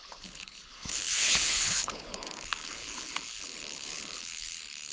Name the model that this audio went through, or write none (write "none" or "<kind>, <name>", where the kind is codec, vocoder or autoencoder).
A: codec, HILCodec